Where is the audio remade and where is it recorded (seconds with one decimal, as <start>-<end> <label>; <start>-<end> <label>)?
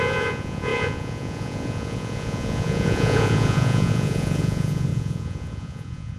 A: 0.0-6.2 remade